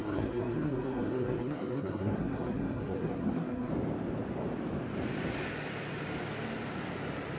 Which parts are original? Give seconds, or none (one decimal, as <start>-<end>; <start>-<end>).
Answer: 3.7-7.4